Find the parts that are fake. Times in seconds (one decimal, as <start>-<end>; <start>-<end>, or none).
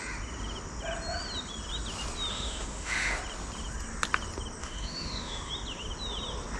2.3-3.2; 4.6-5.5